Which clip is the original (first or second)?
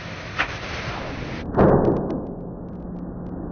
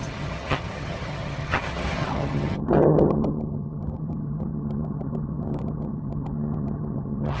first